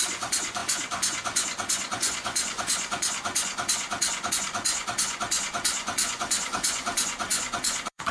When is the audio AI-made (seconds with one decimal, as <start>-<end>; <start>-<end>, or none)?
0.0-8.1